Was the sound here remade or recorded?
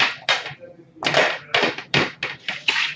recorded